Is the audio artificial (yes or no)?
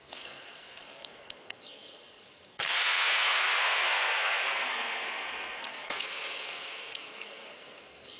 yes